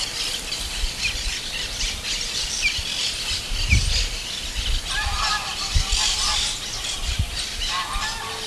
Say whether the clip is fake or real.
real